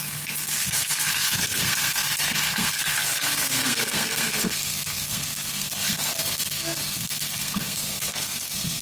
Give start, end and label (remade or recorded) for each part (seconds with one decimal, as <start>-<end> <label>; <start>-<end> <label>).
0.0-8.8 remade